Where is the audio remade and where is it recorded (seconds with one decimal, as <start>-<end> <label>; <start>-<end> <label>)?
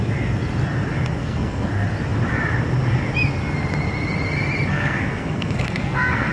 0.0-1.2 recorded; 1.2-1.7 remade; 1.7-4.7 recorded; 4.7-6.3 remade